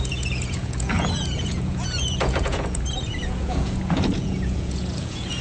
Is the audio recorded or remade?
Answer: remade